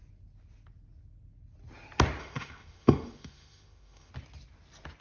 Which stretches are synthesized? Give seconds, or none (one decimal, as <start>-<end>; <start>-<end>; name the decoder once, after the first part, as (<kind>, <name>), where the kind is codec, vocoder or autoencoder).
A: 2.2-4.1 (autoencoder, DAC-VAE)